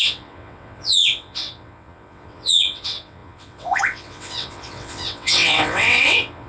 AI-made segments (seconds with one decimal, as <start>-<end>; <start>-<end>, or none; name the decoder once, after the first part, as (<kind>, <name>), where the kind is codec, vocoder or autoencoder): 0.0-6.5 (vocoder, WaveNeXt)